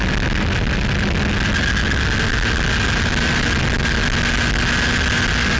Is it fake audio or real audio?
real